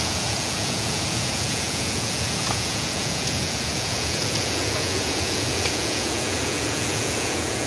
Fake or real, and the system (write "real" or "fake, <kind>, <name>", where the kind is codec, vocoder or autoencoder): fake, vocoder, Vocos